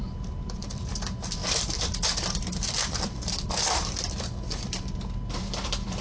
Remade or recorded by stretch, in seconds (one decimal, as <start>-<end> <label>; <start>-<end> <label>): 0.0-0.8 remade; 0.8-1.4 recorded; 1.4-5.0 remade; 5.0-6.0 recorded

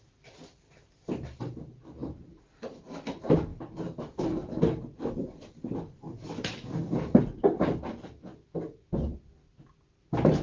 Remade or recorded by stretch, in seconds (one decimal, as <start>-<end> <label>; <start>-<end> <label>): 0.0-10.4 recorded